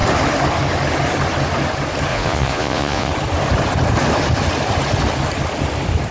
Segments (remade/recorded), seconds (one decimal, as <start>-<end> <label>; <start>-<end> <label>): 0.0-2.1 recorded; 2.1-3.1 remade; 3.1-6.1 recorded